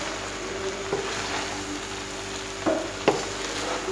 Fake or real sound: real